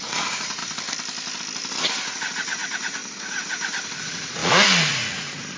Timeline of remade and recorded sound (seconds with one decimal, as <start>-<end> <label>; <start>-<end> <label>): 0.0-0.6 remade; 0.6-1.8 recorded; 1.8-5.6 remade